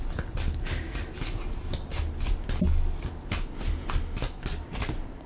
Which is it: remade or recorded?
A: recorded